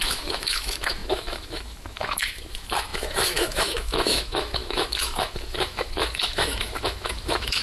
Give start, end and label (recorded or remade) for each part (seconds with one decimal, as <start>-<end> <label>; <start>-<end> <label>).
0.0-7.6 remade